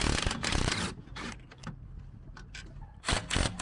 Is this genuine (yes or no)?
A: yes